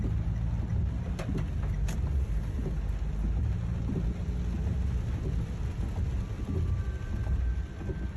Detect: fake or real real